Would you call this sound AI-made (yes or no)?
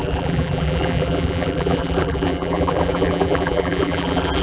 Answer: yes